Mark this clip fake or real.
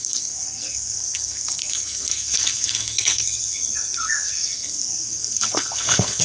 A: fake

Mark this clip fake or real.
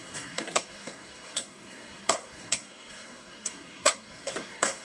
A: fake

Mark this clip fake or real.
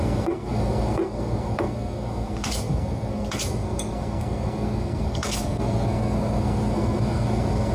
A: fake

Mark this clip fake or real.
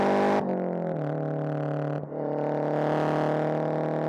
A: real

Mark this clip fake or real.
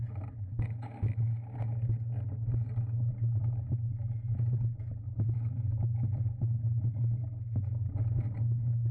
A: real